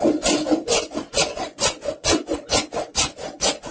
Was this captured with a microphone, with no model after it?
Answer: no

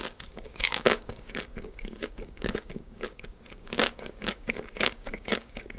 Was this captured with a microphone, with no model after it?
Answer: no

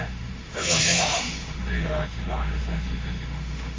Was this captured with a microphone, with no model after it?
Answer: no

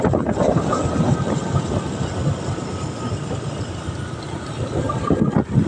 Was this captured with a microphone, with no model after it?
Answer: yes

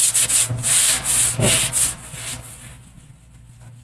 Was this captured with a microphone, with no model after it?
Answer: yes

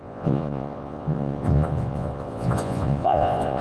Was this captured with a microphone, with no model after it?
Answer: no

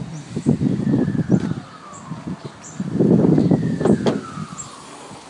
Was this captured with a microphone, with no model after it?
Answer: yes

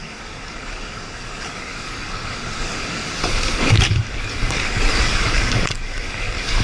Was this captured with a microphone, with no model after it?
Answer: no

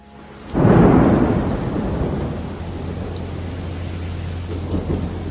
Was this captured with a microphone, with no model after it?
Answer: yes